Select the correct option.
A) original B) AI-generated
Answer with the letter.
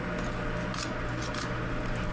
A